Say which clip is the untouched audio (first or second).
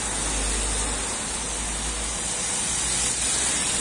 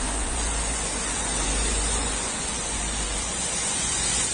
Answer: first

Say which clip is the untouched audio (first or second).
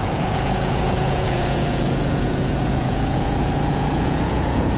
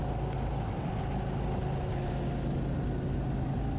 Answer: second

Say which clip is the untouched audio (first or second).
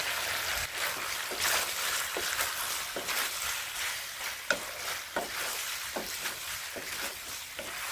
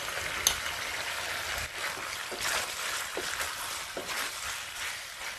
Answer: second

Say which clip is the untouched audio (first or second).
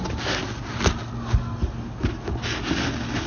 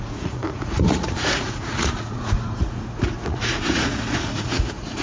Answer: first